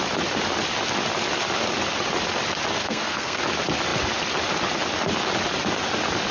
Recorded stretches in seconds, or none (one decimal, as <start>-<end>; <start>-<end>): 0.0-2.8; 3.4-6.3